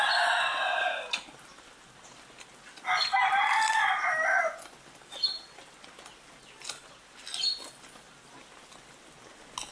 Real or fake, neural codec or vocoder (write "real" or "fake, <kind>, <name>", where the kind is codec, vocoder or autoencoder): real